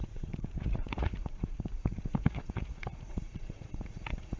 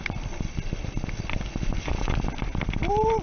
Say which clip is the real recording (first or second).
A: second